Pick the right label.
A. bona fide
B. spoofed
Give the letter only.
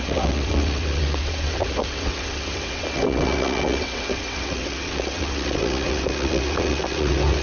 B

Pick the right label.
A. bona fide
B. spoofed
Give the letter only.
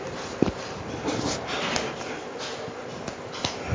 A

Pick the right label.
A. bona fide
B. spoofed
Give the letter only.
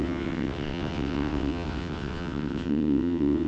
B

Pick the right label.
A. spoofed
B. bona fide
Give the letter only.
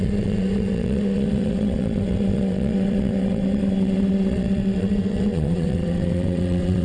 A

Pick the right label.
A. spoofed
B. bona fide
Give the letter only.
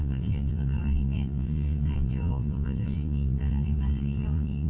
A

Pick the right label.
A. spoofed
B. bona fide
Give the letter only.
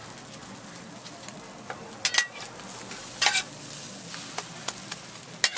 B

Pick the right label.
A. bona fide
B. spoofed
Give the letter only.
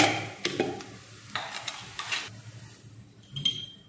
A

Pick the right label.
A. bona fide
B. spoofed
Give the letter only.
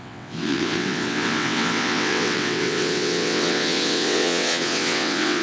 B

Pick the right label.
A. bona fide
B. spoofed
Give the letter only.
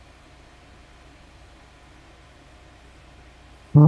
A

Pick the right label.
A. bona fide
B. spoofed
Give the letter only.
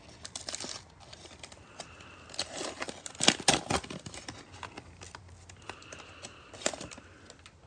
A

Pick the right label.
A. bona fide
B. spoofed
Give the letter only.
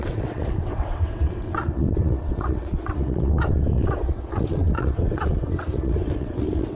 B